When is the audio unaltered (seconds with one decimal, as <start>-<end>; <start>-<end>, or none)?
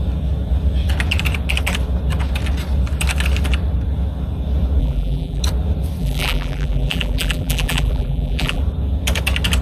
0.0-4.8; 5.4-6.0; 8.6-9.6